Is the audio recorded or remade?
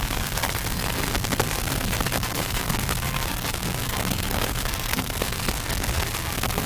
remade